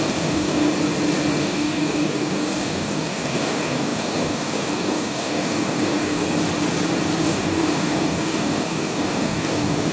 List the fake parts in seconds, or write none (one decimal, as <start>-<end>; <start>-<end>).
0.0-0.7; 1.4-6.2; 7.2-9.9